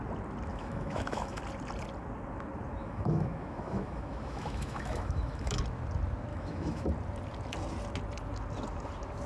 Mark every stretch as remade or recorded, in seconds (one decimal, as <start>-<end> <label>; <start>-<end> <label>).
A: 0.0-0.5 recorded; 0.5-1.4 remade; 1.4-2.8 recorded; 2.8-5.6 remade; 5.6-6.3 recorded; 6.3-6.9 remade; 6.9-9.3 recorded